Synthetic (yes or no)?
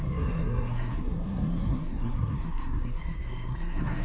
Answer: yes